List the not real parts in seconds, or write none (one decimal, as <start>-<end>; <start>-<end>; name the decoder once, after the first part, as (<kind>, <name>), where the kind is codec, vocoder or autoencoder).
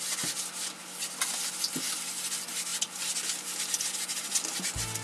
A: none